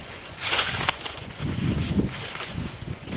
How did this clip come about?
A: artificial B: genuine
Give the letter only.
A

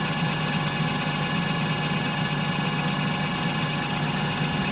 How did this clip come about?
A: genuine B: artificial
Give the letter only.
A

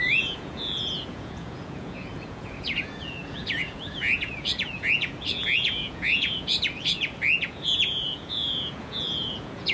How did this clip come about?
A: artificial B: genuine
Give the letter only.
A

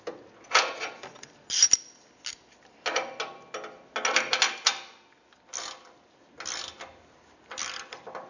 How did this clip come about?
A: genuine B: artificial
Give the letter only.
A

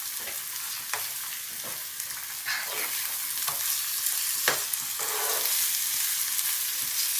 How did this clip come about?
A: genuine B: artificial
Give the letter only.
A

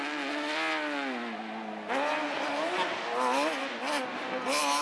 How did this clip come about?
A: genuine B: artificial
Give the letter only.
A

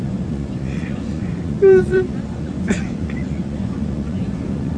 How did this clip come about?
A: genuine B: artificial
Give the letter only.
B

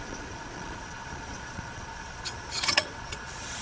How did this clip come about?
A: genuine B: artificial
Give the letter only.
B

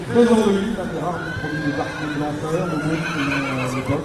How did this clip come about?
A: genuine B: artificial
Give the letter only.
A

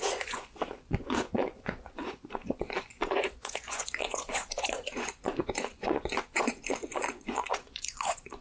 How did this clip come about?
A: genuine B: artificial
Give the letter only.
B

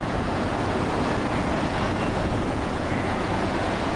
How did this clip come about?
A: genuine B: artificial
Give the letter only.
B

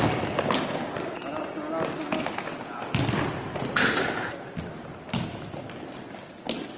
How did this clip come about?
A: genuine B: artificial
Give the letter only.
A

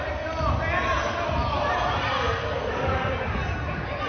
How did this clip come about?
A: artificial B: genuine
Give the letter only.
B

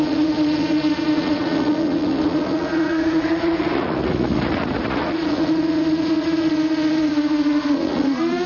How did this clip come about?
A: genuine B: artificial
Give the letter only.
B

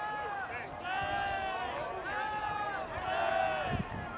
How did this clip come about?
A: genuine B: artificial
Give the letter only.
A